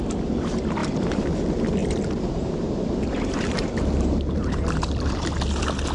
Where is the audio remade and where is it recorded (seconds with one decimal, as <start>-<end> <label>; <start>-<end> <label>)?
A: 0.0-0.8 recorded; 0.8-1.4 remade; 1.4-1.8 recorded; 1.8-5.3 remade; 5.3-5.9 recorded